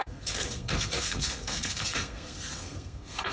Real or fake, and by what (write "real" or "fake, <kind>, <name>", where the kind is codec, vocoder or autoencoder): fake, codec, SNAC